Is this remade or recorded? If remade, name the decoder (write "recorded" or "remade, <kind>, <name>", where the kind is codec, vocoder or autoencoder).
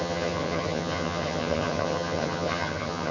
remade, vocoder, HiFi-GAN